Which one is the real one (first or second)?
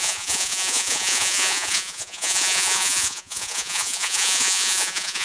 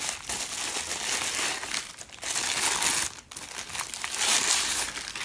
second